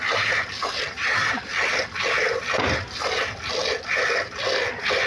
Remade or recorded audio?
recorded